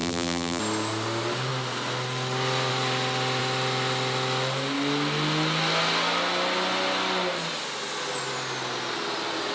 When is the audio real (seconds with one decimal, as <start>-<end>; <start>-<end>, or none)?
0.6-9.5